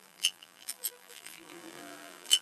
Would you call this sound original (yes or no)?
no